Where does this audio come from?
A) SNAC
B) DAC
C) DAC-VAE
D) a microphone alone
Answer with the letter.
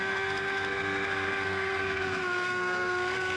A